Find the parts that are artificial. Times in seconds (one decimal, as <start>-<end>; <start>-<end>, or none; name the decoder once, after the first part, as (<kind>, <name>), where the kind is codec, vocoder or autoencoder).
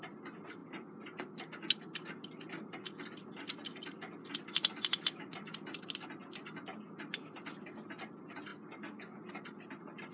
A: none